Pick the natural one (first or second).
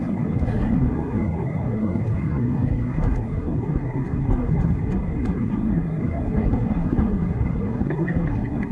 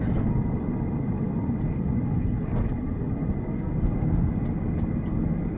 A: second